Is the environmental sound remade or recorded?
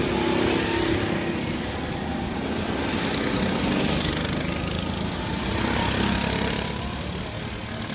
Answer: recorded